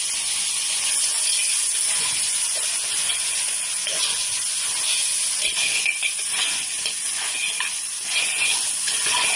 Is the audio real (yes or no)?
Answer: no